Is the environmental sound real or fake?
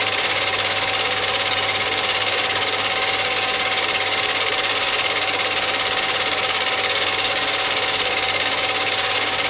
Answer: fake